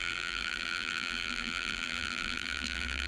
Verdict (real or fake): fake